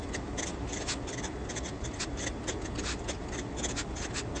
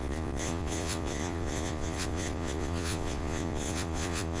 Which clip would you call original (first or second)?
first